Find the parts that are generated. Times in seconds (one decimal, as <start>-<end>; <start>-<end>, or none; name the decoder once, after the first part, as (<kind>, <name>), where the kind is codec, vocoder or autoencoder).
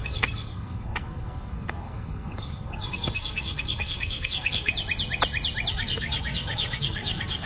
0.0-4.7 (codec, SNAC); 5.7-7.5